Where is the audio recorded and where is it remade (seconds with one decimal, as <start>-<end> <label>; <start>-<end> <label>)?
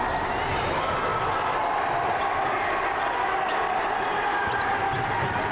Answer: 0.0-5.5 recorded